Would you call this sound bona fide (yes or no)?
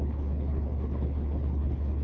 no